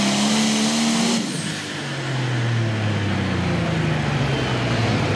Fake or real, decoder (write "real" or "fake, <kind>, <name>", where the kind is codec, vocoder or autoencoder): real